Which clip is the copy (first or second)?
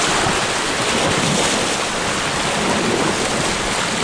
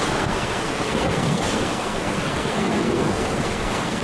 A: second